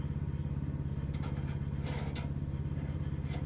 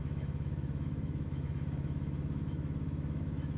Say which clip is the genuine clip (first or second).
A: first